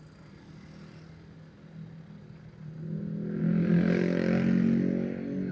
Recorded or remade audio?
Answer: recorded